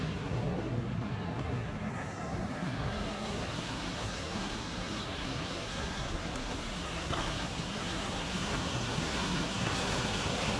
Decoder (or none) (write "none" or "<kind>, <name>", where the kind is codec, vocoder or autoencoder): codec, SNAC